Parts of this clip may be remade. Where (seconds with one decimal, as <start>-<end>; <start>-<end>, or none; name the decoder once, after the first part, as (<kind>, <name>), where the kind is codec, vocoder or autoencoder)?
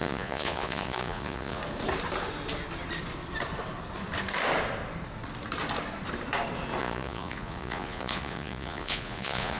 0.0-1.6 (vocoder, Vocos); 6.8-9.6